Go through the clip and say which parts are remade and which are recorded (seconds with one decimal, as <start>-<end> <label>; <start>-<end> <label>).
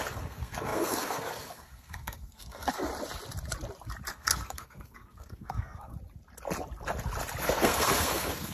0.0-2.9 remade; 2.9-4.1 recorded; 4.1-5.9 remade; 5.9-7.4 recorded; 7.4-8.5 remade